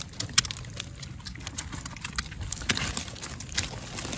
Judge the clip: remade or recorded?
recorded